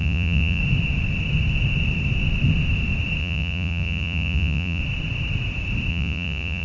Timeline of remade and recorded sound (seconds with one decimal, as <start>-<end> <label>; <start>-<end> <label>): 0.0-0.6 remade; 0.6-3.2 recorded; 3.2-4.8 remade; 4.8-5.9 recorded; 5.9-6.6 remade